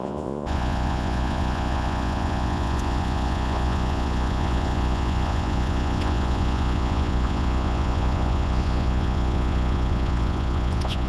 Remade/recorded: remade